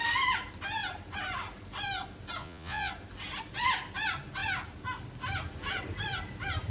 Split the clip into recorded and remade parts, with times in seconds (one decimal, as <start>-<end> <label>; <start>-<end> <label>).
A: 0.0-2.4 recorded; 2.4-2.9 remade; 2.9-6.7 recorded